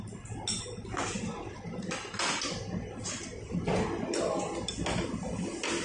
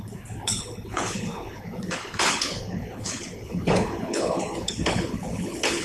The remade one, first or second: second